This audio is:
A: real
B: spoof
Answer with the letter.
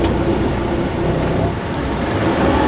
A